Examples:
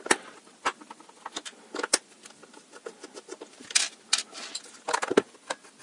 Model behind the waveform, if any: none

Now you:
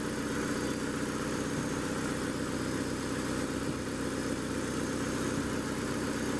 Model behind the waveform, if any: none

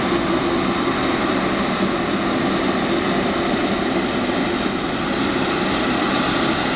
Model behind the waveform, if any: none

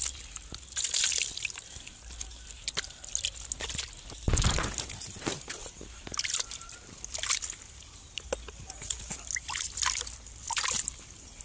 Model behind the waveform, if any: none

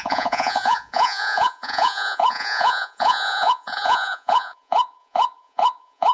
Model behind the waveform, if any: vocoder, Vocos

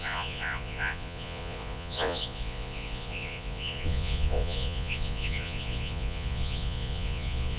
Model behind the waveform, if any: vocoder, Vocos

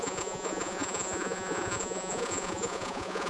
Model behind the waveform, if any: vocoder, Vocos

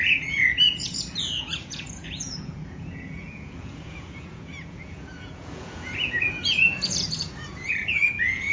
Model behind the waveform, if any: vocoder, Vocos